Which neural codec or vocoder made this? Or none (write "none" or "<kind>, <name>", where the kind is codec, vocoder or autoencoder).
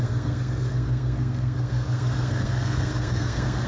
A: codec, SNAC